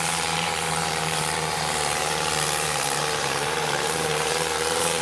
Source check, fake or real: fake